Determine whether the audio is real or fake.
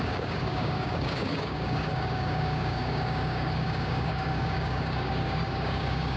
fake